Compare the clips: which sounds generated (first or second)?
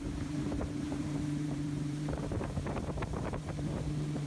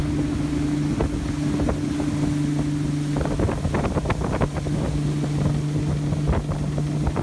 first